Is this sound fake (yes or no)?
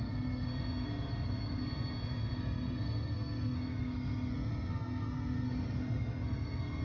yes